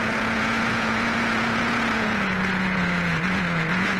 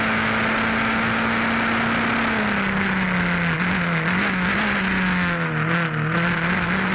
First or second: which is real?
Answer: second